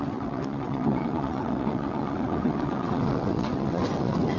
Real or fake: fake